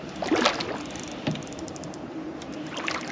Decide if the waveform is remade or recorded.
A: recorded